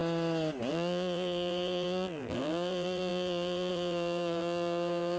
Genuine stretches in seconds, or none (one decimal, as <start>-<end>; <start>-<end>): 0.0-0.7